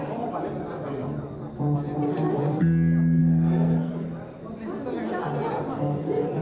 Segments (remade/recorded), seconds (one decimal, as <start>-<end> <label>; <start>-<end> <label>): 0.0-3.2 recorded; 3.2-3.9 remade; 3.9-6.4 recorded